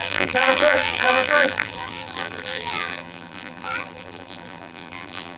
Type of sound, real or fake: fake